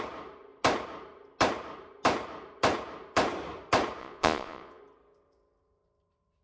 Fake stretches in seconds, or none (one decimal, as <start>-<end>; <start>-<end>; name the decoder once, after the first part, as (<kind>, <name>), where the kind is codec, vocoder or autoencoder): 4.0-4.8 (vocoder, Vocos)